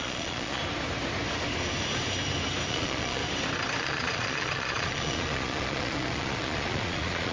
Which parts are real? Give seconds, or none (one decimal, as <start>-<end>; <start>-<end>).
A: 0.6-2.7; 3.2-3.8